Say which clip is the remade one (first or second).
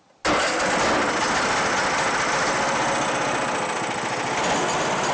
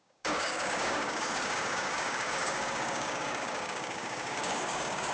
second